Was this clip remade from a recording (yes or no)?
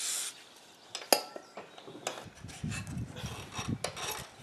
no